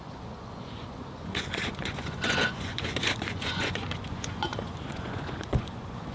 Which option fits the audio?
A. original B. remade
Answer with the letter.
B